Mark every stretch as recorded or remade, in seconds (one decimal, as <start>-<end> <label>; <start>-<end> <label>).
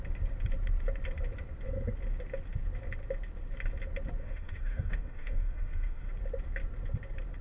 0.0-4.2 recorded; 4.2-6.1 remade; 6.1-7.4 recorded